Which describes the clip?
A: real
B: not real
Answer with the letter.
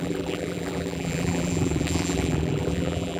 B